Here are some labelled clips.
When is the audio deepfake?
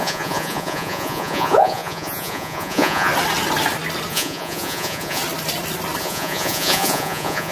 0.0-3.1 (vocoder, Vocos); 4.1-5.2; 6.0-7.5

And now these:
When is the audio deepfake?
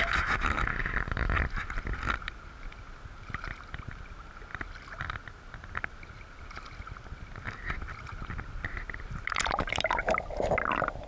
0.8-1.4 (vocoder, BigVGAN v2)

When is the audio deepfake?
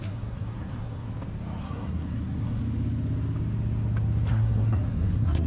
0.0-1.1 (codec, SNAC); 1.6-2.6; 4.3-5.5